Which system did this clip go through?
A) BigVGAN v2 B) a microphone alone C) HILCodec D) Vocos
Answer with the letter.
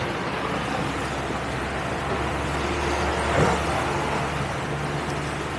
B